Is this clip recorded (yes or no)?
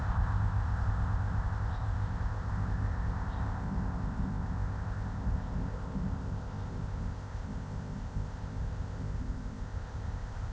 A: no